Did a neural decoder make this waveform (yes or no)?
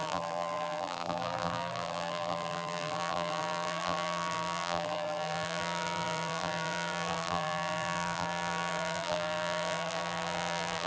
yes